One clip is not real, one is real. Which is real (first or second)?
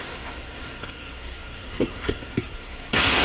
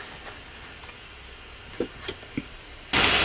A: second